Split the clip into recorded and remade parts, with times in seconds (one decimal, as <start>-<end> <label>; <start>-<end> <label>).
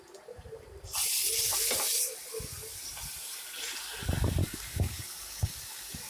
0.0-4.4 recorded; 4.4-6.1 remade